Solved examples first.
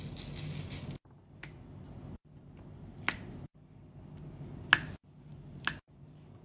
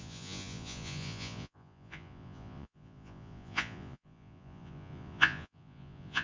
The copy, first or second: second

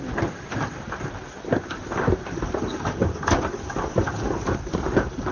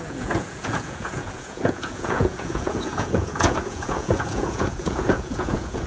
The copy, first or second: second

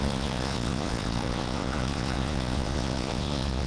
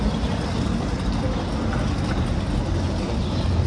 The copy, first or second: first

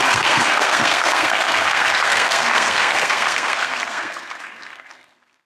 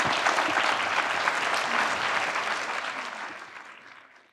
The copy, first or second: first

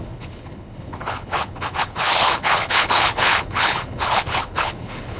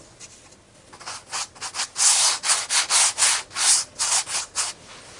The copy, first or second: first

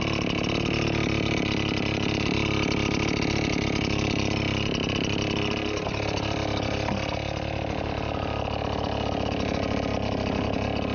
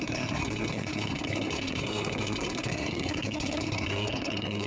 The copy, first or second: second